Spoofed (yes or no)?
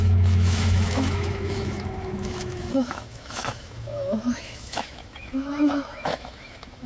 yes